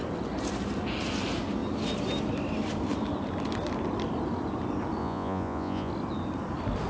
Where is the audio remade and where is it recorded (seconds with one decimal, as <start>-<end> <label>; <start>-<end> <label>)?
0.0-5.0 recorded; 5.0-5.9 remade; 5.9-6.9 recorded